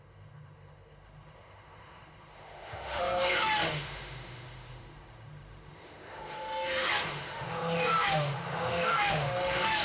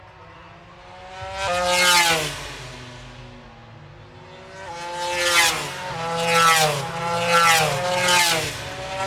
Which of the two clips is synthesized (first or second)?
first